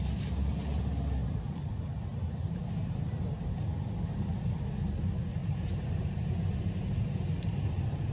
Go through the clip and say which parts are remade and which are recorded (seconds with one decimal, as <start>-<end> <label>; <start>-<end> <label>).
0.0-5.4 recorded; 5.4-7.6 remade; 7.6-8.1 recorded